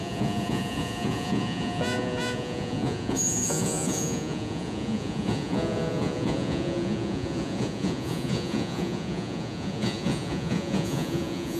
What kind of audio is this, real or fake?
fake